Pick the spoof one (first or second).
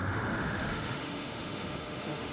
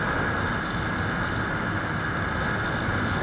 first